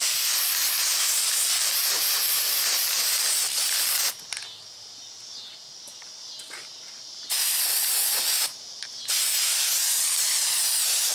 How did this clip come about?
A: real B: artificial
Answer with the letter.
A